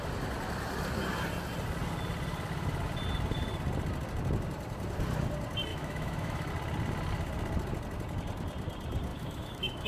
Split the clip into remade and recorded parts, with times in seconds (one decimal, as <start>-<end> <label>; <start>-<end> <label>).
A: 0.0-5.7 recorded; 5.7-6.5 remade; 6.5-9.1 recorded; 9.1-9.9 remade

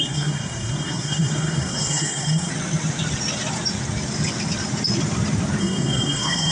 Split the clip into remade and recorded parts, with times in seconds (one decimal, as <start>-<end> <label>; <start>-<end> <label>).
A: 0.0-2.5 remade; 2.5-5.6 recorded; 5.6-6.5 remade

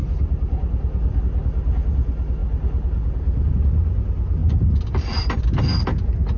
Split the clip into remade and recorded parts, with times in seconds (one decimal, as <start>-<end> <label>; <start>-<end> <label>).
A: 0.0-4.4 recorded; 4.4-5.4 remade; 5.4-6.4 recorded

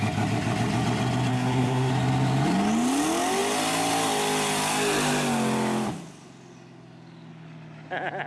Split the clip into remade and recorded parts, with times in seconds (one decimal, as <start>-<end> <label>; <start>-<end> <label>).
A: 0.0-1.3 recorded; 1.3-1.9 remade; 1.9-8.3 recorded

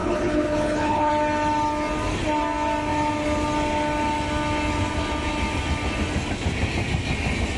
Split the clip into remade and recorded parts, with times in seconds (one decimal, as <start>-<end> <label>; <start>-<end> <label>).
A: 0.0-1.1 remade; 1.1-7.6 recorded

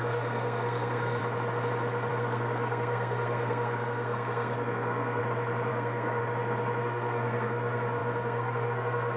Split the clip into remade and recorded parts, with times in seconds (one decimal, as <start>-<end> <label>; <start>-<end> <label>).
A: 0.0-1.2 remade; 1.2-2.1 recorded; 2.1-5.2 remade; 5.2-5.7 recorded; 5.7-6.2 remade; 6.2-6.8 recorded; 6.8-9.2 remade

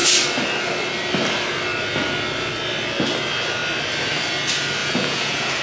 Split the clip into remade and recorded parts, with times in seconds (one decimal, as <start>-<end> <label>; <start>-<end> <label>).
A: 0.0-4.8 recorded; 4.8-5.6 remade